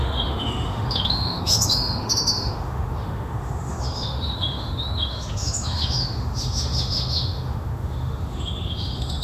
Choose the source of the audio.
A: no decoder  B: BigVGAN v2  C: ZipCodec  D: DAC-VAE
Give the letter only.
D